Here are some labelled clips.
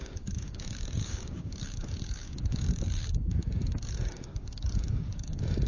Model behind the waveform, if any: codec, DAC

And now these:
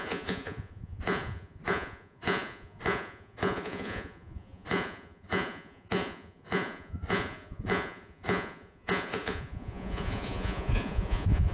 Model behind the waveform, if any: vocoder, Vocos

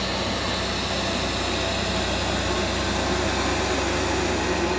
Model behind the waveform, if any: none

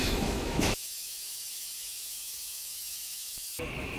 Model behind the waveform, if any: autoencoder, DAC-VAE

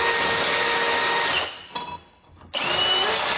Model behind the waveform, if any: none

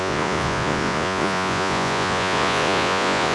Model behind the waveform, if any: vocoder, Vocos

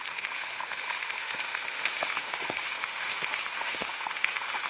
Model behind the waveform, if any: autoencoder, DAC-VAE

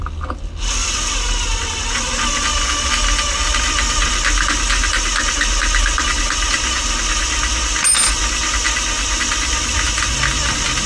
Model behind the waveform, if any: none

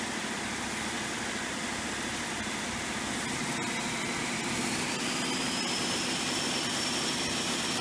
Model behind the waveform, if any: none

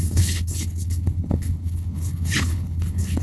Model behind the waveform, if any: codec, HILCodec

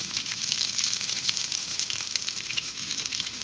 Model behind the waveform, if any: autoencoder, DAC-VAE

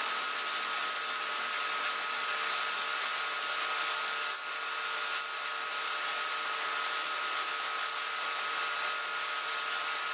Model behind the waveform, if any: none